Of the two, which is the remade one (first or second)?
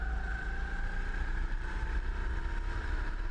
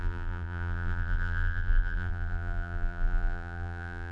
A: second